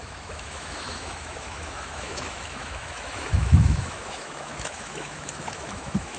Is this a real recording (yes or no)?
no